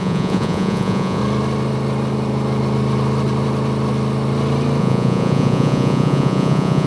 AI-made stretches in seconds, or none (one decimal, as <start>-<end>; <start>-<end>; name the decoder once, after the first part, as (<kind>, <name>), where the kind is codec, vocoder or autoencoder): 0.0-1.2 (vocoder, Vocos); 4.8-6.9